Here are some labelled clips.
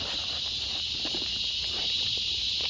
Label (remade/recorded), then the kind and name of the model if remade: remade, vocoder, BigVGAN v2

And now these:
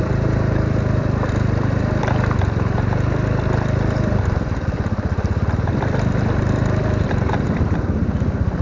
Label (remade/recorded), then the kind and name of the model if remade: remade, vocoder, BigVGAN v2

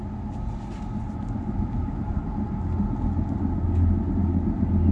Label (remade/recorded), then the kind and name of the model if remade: recorded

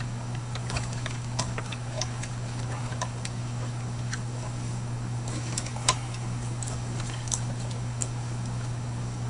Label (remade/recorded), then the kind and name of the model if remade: remade, codec, DAC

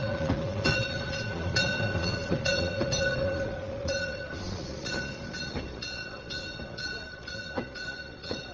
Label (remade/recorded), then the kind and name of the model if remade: remade, vocoder, Vocos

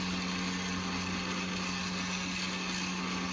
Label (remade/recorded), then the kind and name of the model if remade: recorded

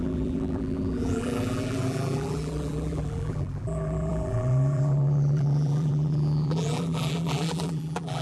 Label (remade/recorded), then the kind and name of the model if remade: remade, vocoder, BigVGAN v2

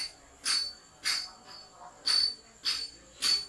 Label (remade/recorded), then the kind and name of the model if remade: recorded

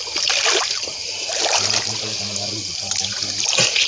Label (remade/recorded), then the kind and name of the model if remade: remade, vocoder, BigVGAN v2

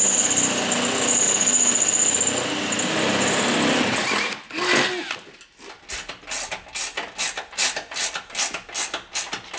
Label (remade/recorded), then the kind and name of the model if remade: recorded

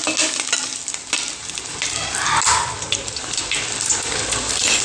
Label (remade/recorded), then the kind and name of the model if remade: recorded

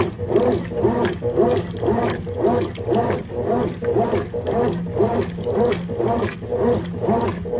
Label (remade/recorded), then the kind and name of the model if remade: recorded